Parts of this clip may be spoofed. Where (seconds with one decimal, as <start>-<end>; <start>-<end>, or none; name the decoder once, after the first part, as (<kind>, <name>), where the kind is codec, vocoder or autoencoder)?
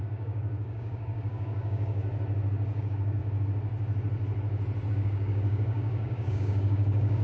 0.0-2.0 (codec, DAC); 2.8-3.2; 4.9-7.2